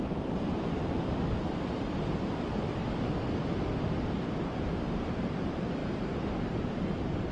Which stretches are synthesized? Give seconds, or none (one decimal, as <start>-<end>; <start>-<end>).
0.0-2.8; 3.5-7.3